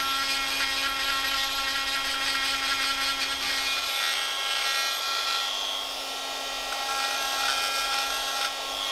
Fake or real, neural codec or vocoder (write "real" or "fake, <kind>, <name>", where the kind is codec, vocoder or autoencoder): real